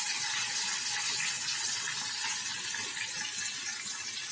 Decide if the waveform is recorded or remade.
recorded